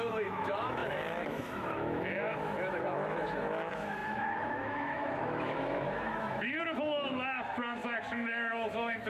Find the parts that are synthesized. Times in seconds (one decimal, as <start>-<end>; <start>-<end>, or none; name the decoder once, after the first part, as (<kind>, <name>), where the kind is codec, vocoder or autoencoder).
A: 0.0-9.1 (autoencoder, DAC-VAE)